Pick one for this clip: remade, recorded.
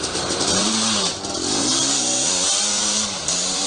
remade